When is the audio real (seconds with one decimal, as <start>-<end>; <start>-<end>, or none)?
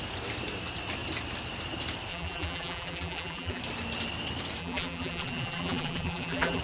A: 0.0-2.1; 3.6-4.6